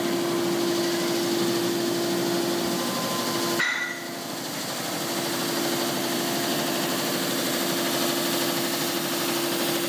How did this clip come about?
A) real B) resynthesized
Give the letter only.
A